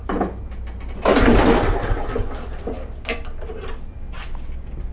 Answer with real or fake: real